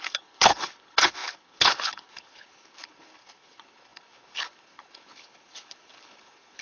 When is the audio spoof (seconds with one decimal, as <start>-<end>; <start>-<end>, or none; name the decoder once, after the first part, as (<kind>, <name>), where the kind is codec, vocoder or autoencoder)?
0.0-6.6 (codec, HILCodec)